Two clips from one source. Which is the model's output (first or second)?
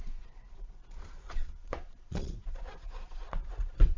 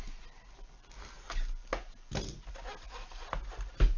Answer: first